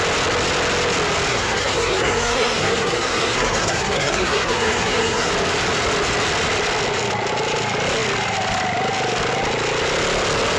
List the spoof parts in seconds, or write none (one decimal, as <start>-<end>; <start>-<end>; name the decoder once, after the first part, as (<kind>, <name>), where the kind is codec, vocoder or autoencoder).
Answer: 1.3-5.3 (codec, SNAC)